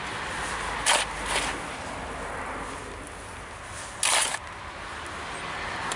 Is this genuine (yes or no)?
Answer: yes